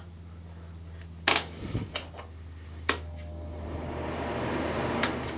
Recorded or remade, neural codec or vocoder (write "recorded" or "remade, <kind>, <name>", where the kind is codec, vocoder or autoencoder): recorded